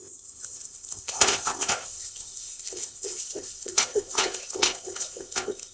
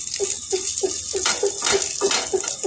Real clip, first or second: second